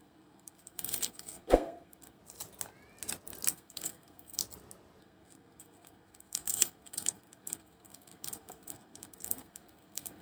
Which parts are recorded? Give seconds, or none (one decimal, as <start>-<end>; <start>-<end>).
2.2-3.5; 4.4-5.0